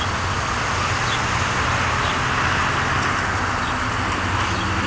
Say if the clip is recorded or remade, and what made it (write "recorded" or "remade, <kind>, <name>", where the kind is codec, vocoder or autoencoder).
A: recorded